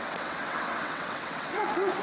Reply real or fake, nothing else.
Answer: fake